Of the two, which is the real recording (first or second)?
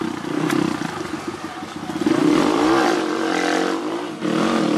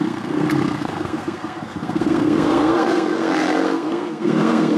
first